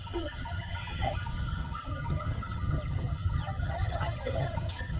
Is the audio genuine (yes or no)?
no